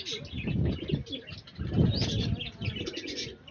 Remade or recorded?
recorded